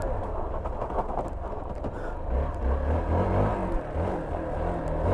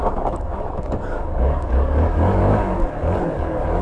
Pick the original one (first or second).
first